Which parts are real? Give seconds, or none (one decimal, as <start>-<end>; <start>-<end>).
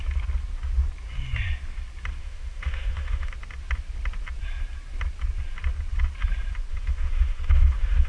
0.0-2.2; 3.3-6.7